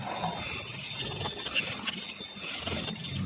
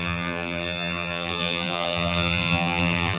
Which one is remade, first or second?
second